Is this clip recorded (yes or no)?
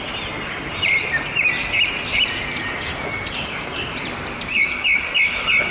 yes